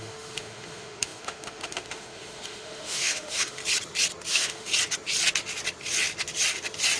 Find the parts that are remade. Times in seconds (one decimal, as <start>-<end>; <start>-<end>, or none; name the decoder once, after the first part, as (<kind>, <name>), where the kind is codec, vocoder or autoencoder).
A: 0.0-3.6 (autoencoder, DAC-VAE); 4.3-4.7